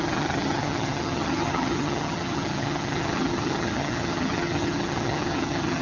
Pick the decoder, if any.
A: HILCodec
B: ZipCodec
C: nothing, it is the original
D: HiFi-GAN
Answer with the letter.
D